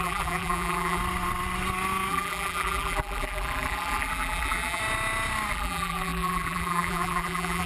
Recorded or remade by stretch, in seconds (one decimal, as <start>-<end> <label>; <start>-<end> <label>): 0.0-1.0 remade; 1.0-2.1 recorded; 2.1-4.8 remade; 4.8-5.5 recorded; 5.5-7.7 remade